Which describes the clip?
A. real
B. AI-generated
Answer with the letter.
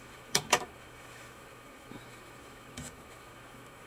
B